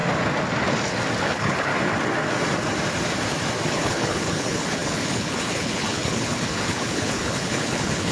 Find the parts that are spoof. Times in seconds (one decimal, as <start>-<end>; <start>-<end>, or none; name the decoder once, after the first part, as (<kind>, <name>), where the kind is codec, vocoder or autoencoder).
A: 1.2-1.7 (codec, HILCodec); 3.7-8.1